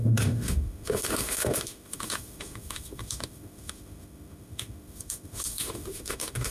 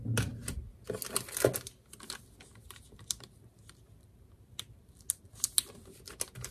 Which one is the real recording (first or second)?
second